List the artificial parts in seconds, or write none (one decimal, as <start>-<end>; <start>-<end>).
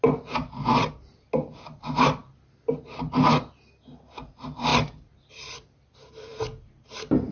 none